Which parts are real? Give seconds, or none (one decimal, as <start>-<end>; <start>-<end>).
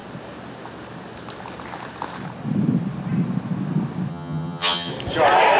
0.0-4.1; 4.9-5.6